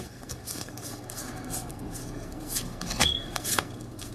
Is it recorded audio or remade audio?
remade